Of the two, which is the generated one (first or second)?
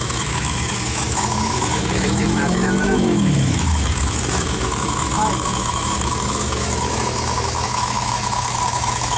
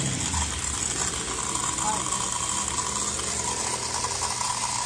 first